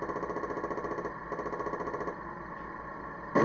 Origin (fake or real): real